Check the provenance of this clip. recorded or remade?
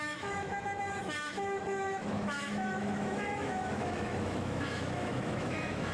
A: remade